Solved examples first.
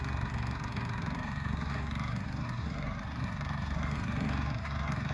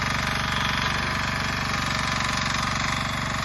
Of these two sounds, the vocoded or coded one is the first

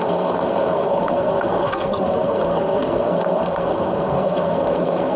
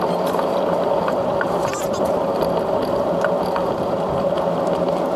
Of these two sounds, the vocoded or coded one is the first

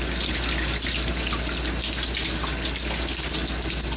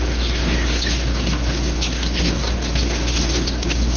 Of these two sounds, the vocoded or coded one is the second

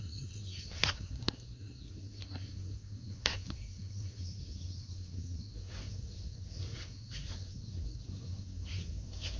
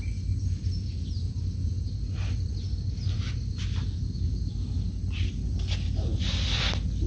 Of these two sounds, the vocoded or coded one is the first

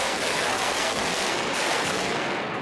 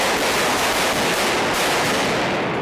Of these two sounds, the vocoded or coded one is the first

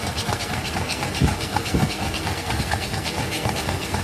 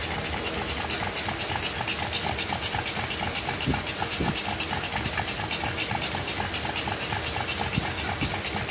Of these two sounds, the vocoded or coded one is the first